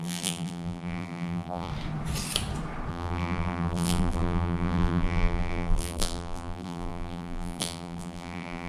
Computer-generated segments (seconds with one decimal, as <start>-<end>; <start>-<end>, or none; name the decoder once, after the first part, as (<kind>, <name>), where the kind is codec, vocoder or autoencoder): 0.0-1.7 (vocoder, BigVGAN v2); 2.9-8.7